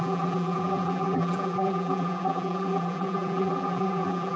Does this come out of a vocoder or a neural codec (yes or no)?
yes